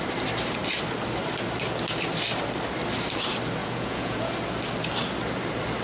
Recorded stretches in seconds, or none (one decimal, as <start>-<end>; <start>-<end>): 0.0-3.6; 4.3-5.8